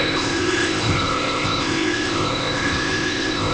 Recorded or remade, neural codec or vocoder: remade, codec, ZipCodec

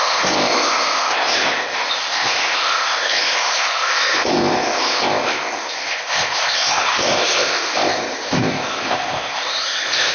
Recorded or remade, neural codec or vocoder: remade, codec, ZipCodec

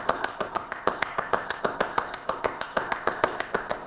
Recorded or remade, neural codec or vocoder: remade, codec, ZipCodec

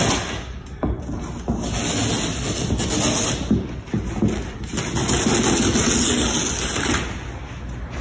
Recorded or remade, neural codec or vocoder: recorded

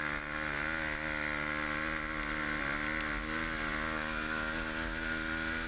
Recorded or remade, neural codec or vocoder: recorded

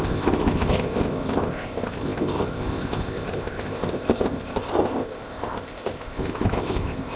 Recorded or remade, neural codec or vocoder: remade, codec, ZipCodec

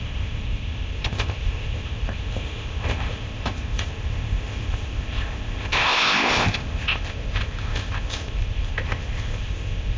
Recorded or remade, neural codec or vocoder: remade, codec, ZipCodec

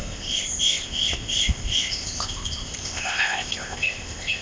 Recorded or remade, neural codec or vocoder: remade, codec, ZipCodec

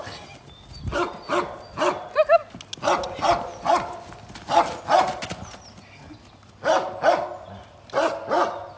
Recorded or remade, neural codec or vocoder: recorded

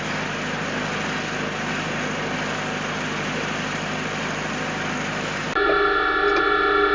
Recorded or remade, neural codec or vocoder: recorded